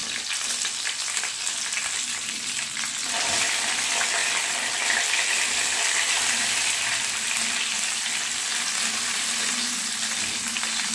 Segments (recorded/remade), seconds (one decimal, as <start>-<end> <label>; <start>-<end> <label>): 0.0-10.9 recorded